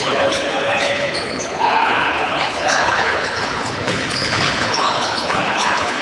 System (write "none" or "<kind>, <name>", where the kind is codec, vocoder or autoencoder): codec, HILCodec